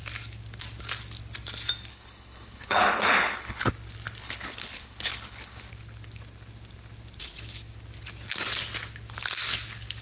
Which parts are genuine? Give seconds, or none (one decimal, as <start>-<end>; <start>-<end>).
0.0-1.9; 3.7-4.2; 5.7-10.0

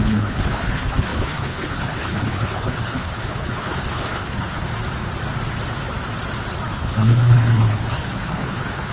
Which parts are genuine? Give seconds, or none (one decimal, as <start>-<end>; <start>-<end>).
4.7-6.7

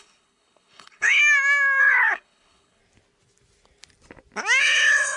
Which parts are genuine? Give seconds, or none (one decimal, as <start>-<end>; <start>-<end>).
1.2-1.8; 2.8-4.6

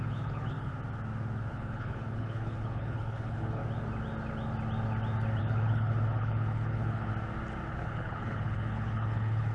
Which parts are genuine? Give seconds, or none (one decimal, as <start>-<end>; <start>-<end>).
0.7-1.5; 3.6-5.4; 7.1-7.7

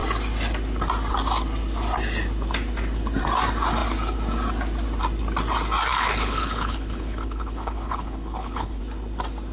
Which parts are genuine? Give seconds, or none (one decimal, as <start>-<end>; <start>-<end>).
0.0-5.9; 8.8-9.5